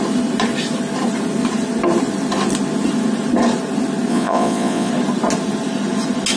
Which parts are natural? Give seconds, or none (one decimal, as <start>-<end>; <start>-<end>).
0.0-4.1; 4.9-6.4